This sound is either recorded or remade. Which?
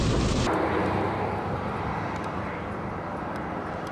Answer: recorded